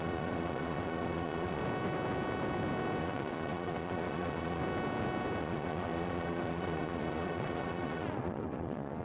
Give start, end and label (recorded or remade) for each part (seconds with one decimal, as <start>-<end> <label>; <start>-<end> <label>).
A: 0.0-1.6 remade; 1.6-3.0 recorded; 3.0-4.6 remade; 4.6-5.4 recorded; 5.4-9.0 remade